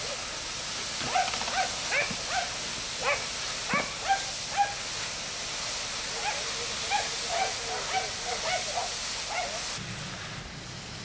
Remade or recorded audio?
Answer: recorded